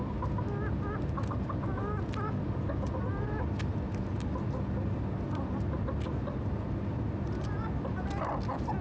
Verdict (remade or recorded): recorded